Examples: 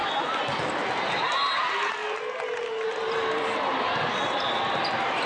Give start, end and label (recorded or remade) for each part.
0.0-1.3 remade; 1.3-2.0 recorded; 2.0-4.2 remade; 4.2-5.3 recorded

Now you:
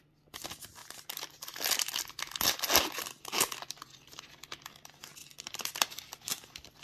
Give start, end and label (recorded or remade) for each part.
0.0-5.2 recorded; 5.2-6.8 remade

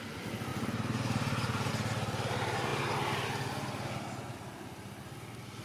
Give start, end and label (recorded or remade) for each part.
0.0-0.5 recorded; 0.5-1.7 remade; 1.7-5.6 recorded

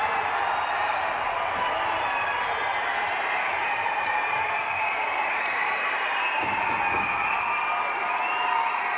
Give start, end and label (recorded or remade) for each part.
0.0-2.7 recorded; 2.7-6.7 remade; 6.7-9.0 recorded

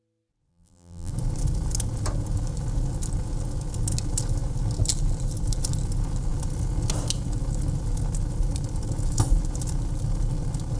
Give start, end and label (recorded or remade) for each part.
0.0-0.5 recorded; 0.5-1.1 remade; 1.1-10.8 recorded

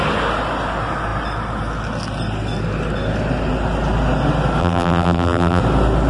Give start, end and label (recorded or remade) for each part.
0.0-4.6 recorded; 4.6-5.6 remade; 5.6-6.1 recorded